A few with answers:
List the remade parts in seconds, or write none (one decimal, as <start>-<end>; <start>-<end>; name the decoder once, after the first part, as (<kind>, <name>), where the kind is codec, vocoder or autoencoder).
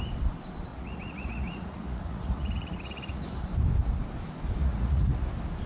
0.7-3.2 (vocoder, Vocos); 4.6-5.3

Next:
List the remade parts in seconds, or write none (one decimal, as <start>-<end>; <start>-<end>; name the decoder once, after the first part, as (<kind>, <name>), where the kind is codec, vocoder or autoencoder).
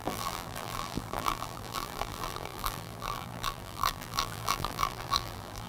0.0-5.7 (vocoder, BigVGAN v2)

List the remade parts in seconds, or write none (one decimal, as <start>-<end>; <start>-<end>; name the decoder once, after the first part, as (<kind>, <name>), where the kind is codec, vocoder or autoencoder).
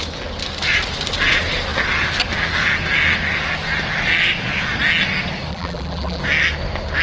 5.5-6.2 (vocoder, BigVGAN v2)